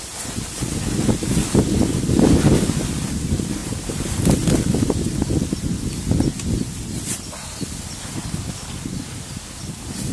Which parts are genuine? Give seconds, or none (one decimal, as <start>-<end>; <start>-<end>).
0.0-10.1